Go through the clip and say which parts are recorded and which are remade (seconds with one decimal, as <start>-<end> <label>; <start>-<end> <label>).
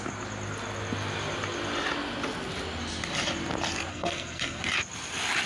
0.0-3.9 recorded; 3.9-4.6 remade; 4.6-5.5 recorded